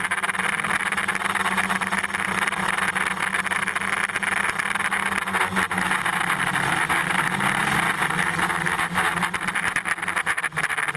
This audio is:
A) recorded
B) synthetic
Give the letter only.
A